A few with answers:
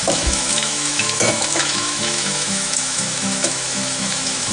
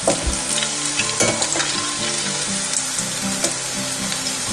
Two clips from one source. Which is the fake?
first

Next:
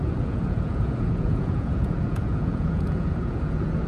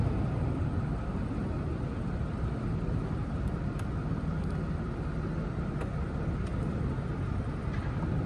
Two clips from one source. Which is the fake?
first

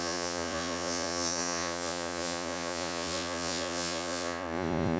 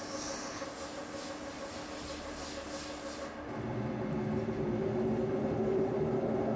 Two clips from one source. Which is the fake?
first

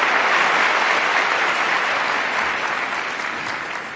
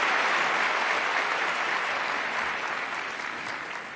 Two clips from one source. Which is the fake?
second